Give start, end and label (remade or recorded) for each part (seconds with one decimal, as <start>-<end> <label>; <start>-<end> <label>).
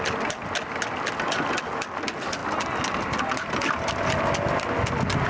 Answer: 0.0-5.3 recorded